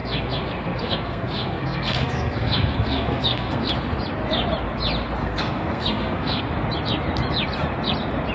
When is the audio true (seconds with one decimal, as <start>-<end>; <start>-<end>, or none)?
3.7-5.2; 6.4-8.3